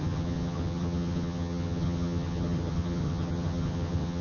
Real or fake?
fake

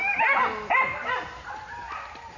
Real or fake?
real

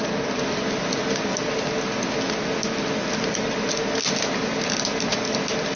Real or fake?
real